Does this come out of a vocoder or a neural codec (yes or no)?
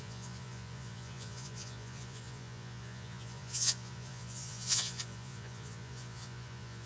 yes